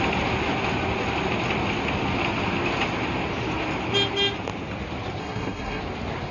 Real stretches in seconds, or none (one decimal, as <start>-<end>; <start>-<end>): 0.0-5.2; 5.8-6.3